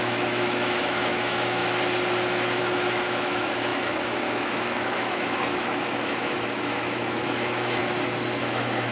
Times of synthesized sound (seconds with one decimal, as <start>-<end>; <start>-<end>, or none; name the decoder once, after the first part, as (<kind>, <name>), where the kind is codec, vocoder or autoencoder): 0.0-1.6 (autoencoder, DAC-VAE); 2.6-7.8; 8.4-8.9